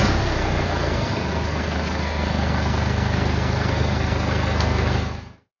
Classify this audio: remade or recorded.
remade